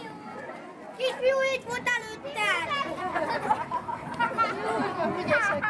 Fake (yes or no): no